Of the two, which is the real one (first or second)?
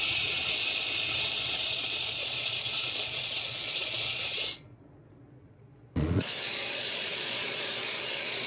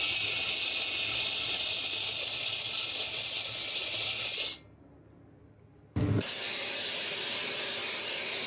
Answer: second